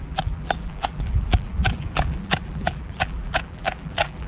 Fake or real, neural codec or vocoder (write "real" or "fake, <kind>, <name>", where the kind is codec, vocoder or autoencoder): fake, vocoder, BigVGAN v2